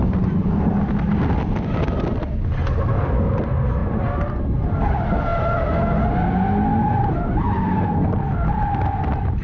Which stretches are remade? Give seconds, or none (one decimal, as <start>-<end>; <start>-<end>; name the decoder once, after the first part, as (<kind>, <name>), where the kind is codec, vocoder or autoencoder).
0.0-3.8 (vocoder, BigVGAN v2); 4.4-5.3; 7.0-9.4